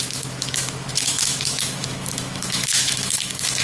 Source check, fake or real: fake